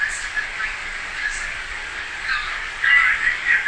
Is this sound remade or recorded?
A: remade